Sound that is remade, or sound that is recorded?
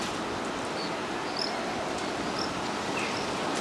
recorded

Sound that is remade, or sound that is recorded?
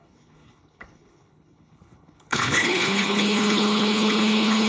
remade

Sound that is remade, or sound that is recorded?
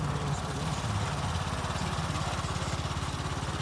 recorded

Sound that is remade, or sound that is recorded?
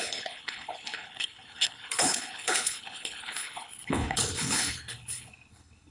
remade